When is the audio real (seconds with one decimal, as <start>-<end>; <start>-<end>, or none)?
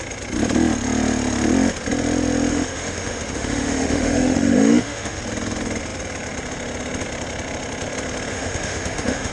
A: 0.0-2.5; 5.2-8.3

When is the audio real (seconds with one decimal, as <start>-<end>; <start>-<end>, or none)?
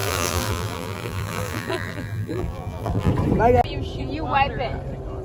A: 3.1-5.2